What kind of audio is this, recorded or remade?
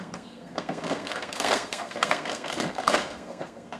remade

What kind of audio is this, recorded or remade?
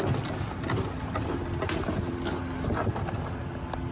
recorded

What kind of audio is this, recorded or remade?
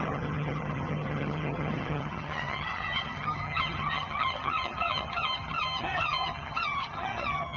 remade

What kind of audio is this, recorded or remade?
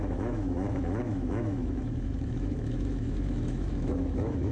remade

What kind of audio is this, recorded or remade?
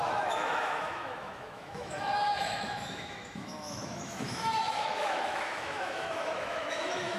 remade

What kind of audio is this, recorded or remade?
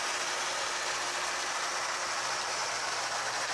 recorded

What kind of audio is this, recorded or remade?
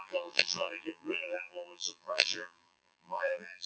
remade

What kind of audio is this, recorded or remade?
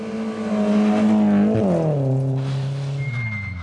recorded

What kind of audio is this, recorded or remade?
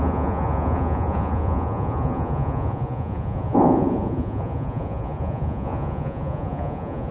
remade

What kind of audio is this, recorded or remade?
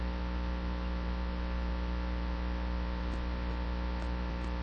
recorded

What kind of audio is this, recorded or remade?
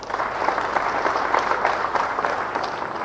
remade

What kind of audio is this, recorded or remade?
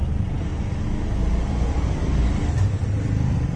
recorded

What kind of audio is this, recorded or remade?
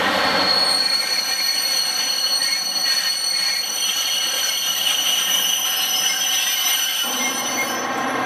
remade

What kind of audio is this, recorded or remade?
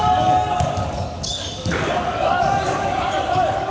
remade